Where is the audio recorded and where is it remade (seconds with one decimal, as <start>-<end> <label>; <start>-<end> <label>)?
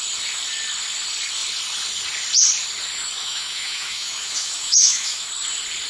0.0-3.2 recorded; 3.2-5.3 remade; 5.3-5.9 recorded